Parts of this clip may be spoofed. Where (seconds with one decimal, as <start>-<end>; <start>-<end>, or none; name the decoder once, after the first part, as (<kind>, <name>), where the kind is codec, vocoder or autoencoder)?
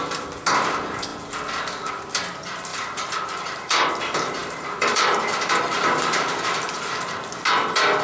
2.7-3.9 (vocoder, BigVGAN v2); 4.4-6.9